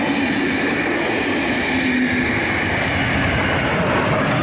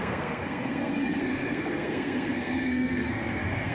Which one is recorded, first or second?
first